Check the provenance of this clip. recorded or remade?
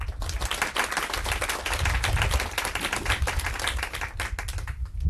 recorded